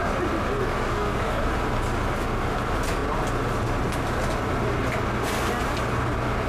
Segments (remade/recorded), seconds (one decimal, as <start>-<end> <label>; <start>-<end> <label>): 0.0-0.6 recorded; 0.6-1.4 remade; 1.4-6.5 recorded